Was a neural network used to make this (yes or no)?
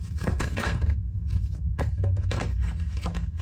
yes